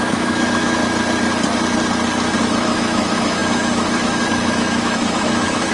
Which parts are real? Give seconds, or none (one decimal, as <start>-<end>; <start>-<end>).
0.8-2.4